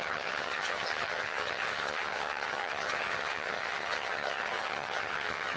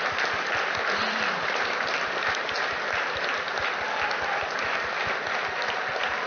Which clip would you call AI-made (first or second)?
first